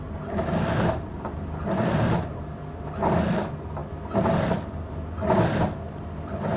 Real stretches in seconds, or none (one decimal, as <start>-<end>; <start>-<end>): 0.0-6.6